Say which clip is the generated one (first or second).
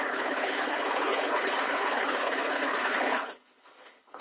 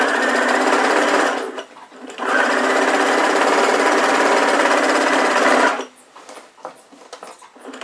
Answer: first